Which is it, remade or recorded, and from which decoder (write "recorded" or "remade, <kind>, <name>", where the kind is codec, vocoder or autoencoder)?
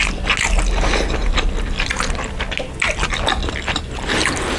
recorded